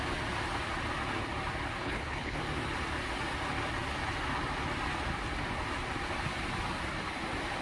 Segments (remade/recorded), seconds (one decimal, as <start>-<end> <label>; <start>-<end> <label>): 0.0-1.8 recorded; 1.8-2.4 remade; 2.4-7.6 recorded